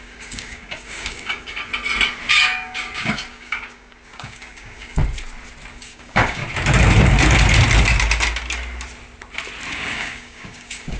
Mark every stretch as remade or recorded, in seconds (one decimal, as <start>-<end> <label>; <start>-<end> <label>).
0.0-1.7 remade; 1.7-2.3 recorded; 2.3-5.0 remade; 5.0-5.7 recorded; 5.7-6.4 remade; 6.4-9.7 recorded; 9.7-11.0 remade